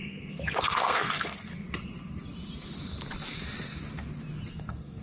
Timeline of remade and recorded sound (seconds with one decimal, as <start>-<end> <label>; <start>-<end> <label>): 0.0-1.5 remade; 1.5-4.5 recorded; 4.5-5.0 remade